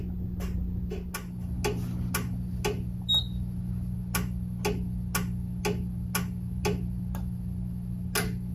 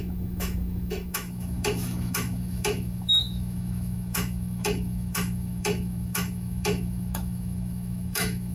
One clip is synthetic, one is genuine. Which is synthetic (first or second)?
second